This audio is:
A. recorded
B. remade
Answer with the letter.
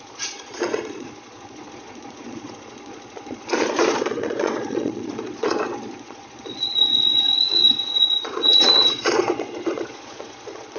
B